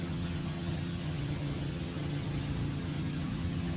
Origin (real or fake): fake